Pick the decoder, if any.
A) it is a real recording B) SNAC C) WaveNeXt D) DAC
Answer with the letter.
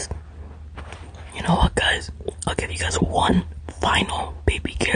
A